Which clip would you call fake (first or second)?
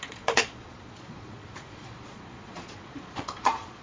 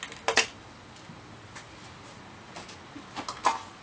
first